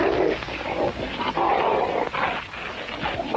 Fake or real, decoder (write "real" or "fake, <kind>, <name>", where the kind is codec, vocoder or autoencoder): real